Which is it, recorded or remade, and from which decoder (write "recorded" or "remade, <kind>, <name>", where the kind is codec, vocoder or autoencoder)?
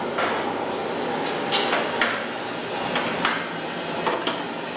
recorded